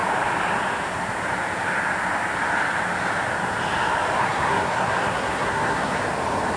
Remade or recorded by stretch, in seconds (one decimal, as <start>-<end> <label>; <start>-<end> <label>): 0.0-4.2 recorded; 4.2-6.0 remade; 6.0-6.6 recorded